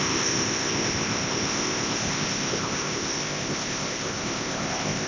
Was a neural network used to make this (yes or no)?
yes